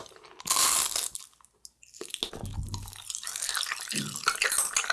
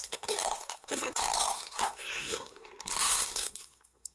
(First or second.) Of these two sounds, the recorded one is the first